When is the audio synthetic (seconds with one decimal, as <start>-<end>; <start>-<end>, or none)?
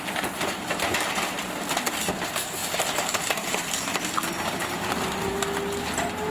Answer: 2.6-3.5; 3.9-5.1